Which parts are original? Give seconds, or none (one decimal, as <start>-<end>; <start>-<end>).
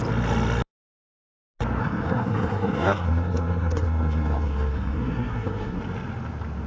0.0-1.8; 5.8-6.7